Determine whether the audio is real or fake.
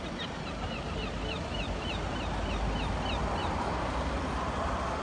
real